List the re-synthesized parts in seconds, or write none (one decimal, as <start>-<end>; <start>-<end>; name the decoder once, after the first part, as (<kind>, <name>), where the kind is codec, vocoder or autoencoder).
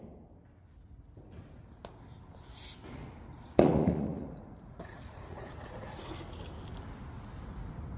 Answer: 3.4-6.0 (vocoder, Vocos)